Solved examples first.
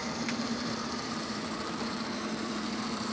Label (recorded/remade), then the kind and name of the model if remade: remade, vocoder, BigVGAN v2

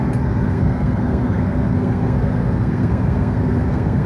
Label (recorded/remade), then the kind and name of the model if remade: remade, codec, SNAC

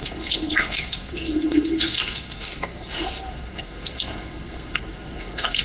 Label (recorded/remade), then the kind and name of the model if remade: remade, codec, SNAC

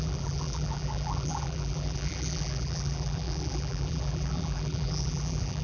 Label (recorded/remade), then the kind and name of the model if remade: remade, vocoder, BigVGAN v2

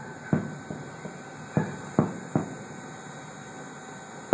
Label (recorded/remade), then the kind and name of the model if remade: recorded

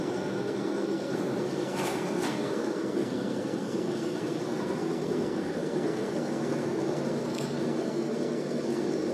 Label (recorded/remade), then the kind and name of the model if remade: remade, codec, SNAC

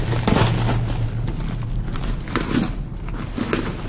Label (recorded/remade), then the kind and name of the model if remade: recorded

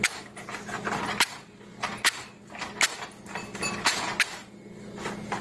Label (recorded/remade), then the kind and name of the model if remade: recorded